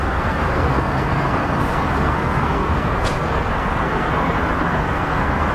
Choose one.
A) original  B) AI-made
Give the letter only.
B